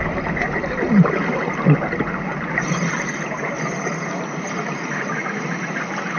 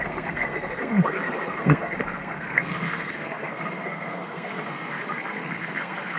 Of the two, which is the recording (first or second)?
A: first